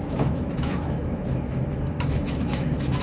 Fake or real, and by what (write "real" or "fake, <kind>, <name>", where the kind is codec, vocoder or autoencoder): fake, autoencoder, DAC-VAE